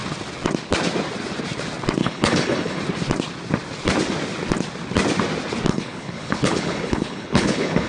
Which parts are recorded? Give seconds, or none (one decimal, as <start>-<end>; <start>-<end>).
0.0-2.0; 2.8-5.7